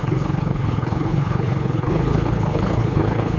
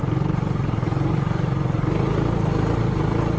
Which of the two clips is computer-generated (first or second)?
first